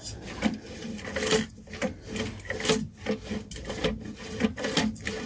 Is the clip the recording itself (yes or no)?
yes